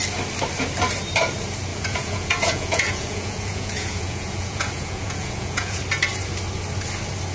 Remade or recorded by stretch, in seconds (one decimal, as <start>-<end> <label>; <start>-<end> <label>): 0.0-1.7 recorded; 1.7-5.8 remade; 5.8-7.3 recorded